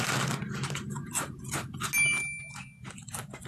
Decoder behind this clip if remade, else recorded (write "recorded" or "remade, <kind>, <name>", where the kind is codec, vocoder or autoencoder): recorded